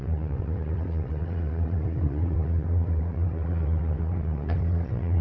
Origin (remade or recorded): remade